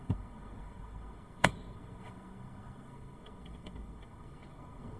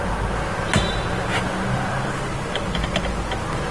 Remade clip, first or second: first